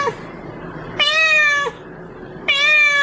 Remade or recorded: recorded